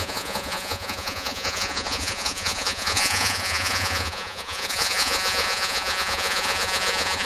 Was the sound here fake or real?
fake